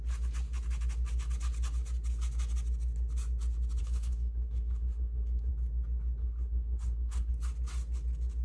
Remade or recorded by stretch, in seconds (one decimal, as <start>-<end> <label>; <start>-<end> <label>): 0.0-3.8 recorded; 3.8-5.5 remade; 5.5-6.2 recorded; 6.2-7.3 remade; 7.3-8.4 recorded